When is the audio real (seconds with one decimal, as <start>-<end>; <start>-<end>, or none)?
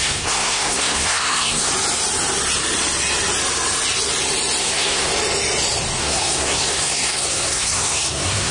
1.7-4.6; 5.1-6.0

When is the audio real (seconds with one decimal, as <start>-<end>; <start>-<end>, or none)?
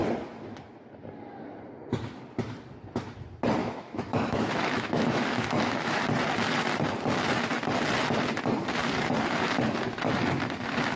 0.0-3.6; 6.0-11.0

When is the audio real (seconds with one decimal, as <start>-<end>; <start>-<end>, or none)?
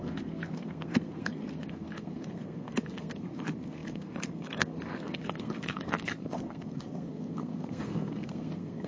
none